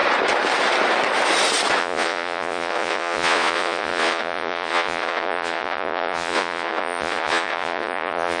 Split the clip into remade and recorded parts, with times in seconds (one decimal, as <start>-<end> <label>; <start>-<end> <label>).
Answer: 0.0-1.8 recorded; 1.8-8.4 remade